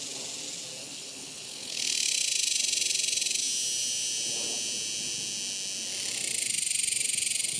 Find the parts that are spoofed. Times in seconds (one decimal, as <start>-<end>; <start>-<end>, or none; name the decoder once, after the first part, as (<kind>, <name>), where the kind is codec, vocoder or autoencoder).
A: 0.8-1.8 (codec, HILCodec)